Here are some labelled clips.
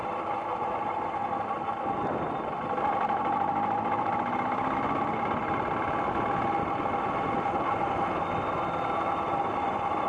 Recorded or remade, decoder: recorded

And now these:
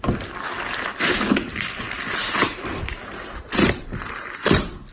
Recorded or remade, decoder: recorded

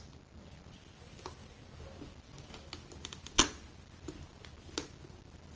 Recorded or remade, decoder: recorded